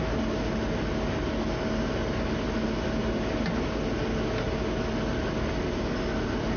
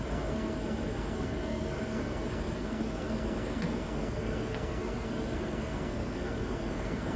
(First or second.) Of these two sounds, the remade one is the second